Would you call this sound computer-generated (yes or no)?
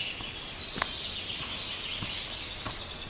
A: no